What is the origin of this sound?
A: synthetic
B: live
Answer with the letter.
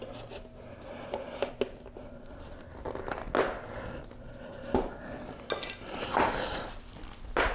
B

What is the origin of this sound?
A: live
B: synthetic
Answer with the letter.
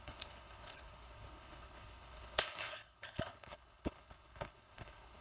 B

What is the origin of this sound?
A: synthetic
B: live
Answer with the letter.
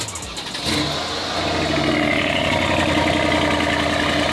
B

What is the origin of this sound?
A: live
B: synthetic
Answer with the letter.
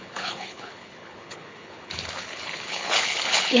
B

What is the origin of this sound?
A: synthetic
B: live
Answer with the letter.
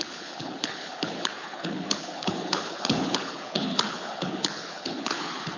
A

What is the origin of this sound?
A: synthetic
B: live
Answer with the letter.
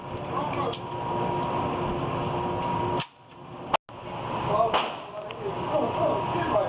B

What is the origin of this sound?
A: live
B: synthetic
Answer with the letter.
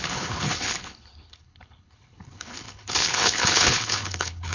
B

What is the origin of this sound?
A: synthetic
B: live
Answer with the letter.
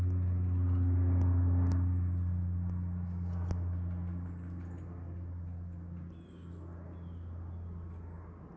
B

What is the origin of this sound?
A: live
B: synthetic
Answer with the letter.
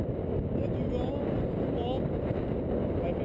A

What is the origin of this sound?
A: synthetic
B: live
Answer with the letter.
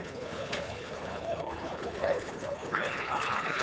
A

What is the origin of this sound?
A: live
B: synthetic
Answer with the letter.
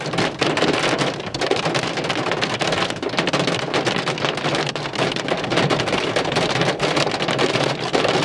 A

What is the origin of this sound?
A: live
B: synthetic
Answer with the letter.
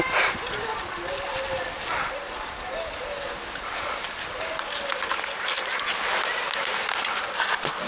A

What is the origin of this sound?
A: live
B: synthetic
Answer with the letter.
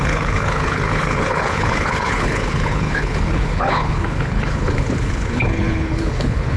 B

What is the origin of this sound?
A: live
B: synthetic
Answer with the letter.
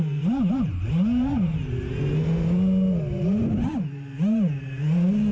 A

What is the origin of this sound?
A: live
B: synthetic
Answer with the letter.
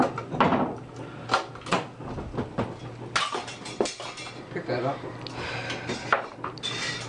A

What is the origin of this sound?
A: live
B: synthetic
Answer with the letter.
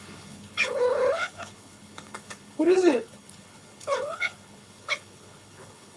B